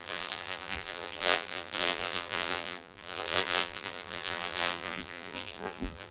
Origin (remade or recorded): remade